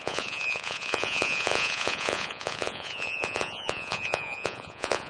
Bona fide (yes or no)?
no